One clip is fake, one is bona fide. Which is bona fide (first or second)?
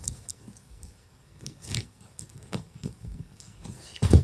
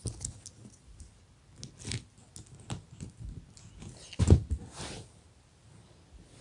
second